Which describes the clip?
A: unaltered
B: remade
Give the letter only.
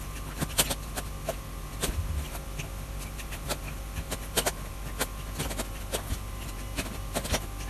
A